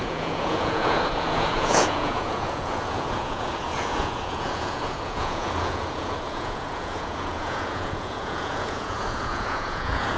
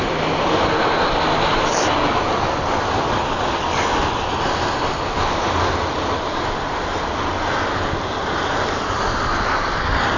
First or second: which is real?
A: second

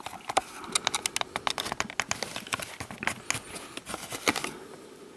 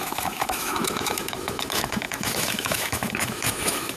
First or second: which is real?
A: first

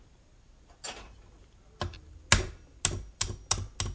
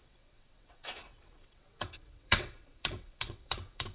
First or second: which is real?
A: first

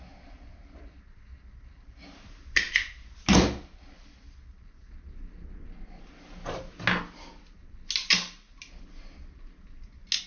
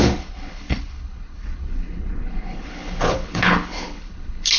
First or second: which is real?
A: first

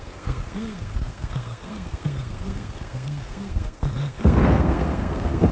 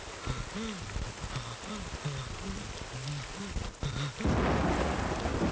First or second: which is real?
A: second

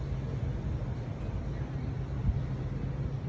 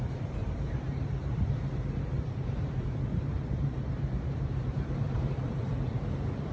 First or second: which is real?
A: first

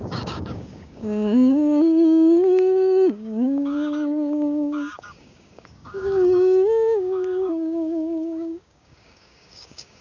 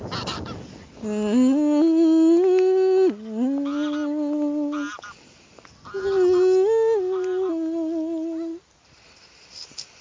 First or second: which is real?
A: second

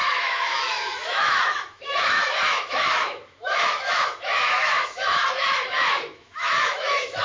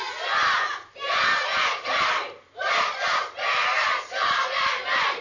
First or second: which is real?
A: second